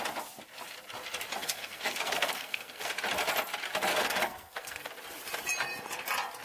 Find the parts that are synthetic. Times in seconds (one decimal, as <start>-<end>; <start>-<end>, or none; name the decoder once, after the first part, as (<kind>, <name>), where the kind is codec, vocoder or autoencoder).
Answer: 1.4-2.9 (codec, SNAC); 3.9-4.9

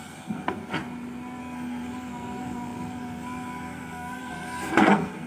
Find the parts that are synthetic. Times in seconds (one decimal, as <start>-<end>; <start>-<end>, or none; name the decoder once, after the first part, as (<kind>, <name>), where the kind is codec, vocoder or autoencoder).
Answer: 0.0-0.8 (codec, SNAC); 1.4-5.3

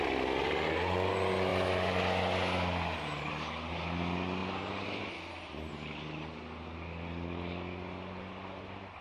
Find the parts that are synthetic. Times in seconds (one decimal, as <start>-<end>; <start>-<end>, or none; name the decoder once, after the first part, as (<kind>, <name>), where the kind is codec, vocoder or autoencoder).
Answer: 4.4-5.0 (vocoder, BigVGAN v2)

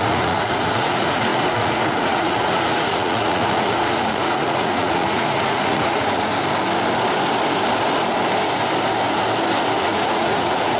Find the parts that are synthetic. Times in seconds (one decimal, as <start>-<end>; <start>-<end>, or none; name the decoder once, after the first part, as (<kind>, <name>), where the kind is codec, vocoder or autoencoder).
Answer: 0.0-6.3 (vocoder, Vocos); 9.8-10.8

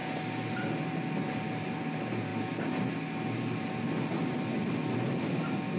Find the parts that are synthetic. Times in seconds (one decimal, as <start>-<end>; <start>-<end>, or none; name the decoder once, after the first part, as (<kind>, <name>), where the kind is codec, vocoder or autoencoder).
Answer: none